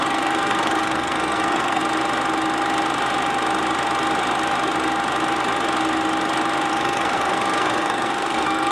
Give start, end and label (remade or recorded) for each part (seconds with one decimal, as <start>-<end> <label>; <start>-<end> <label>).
0.0-1.8 remade; 1.8-6.7 recorded; 6.7-8.7 remade